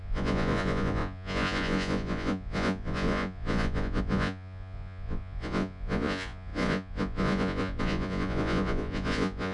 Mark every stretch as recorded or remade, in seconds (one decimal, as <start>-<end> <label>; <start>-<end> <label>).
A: 0.0-9.5 remade